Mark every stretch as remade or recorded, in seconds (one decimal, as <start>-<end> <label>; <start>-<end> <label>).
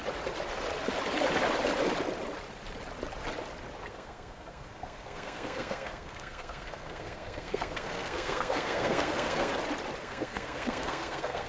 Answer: 0.0-3.9 recorded; 3.9-9.5 remade; 9.5-10.0 recorded; 10.0-11.5 remade